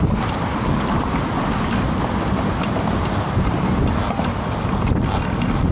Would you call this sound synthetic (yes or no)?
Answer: no